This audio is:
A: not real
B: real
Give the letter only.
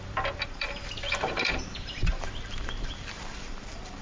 A